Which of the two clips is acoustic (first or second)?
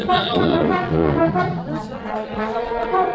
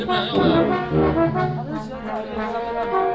second